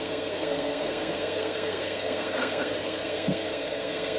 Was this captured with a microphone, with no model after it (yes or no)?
no